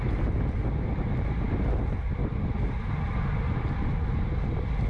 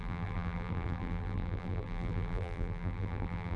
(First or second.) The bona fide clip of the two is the first